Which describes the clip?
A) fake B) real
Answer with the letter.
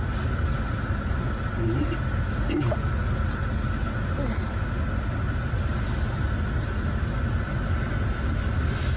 B